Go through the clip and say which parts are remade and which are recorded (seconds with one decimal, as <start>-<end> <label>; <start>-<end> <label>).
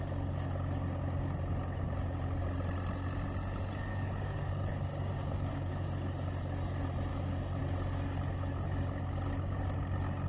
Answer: 0.0-3.9 recorded; 3.9-5.7 remade; 5.7-7.1 recorded; 7.1-7.6 remade; 7.6-10.3 recorded